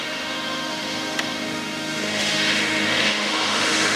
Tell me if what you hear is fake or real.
fake